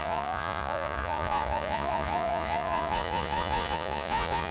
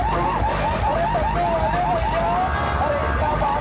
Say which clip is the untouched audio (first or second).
second